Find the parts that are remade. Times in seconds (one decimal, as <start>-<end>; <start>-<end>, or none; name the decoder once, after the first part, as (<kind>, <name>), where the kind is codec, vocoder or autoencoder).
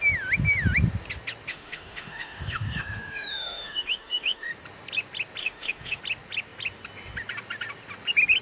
1.5-4.5 (autoencoder, DAC-VAE); 5.4-6.0